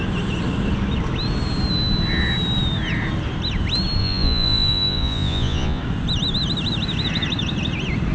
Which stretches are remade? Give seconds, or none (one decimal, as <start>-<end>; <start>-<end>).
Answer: 4.0-5.8